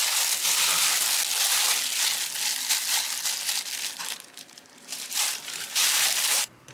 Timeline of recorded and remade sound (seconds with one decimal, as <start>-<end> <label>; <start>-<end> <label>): 0.0-4.0 recorded; 4.0-6.7 remade